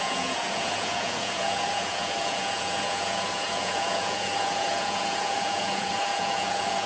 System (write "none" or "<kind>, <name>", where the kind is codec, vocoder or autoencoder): vocoder, Vocos